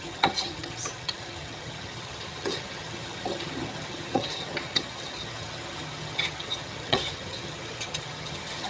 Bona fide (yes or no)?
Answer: no